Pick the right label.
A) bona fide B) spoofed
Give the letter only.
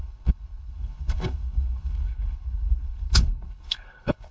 B